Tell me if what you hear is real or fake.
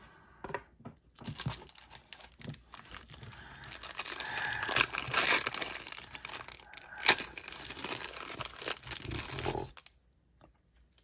real